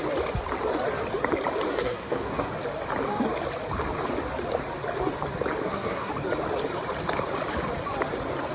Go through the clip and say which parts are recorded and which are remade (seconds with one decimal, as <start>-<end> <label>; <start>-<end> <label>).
0.0-1.7 recorded; 1.7-2.5 remade; 2.5-5.6 recorded; 5.6-6.1 remade; 6.1-8.5 recorded